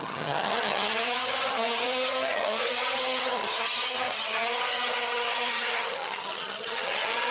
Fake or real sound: fake